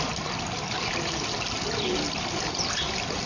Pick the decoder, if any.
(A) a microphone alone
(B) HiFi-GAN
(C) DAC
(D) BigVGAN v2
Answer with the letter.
A